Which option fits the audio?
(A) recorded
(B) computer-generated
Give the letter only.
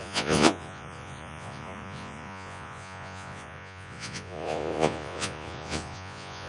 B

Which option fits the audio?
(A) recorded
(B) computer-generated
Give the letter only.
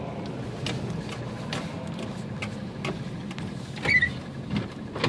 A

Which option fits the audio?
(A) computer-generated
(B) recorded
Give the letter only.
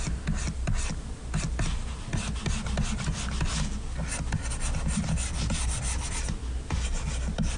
B